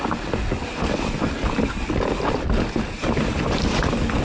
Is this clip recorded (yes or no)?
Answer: yes